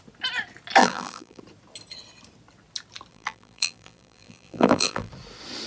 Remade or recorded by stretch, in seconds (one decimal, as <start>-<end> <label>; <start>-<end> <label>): 0.0-0.8 recorded; 0.8-1.4 remade; 1.4-3.1 recorded; 3.1-5.1 remade; 5.1-5.7 recorded